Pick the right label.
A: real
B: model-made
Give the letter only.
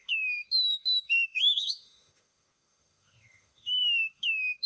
B